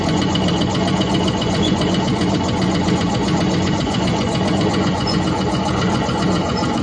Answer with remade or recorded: remade